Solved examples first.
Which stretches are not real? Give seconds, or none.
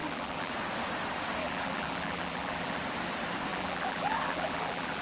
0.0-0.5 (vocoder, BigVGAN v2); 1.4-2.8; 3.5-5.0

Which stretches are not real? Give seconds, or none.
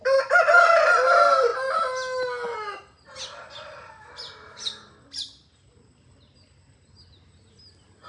none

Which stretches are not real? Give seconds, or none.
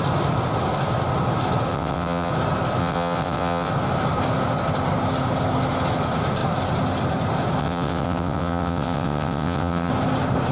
1.7-2.3 (vocoder, WaveNeXt); 2.8-3.7; 7.6-9.9